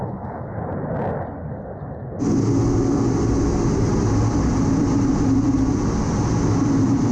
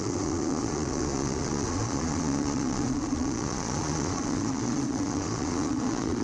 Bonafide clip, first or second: first